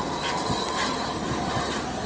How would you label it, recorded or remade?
recorded